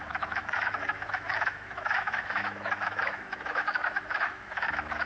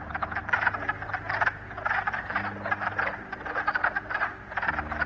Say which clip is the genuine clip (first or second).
second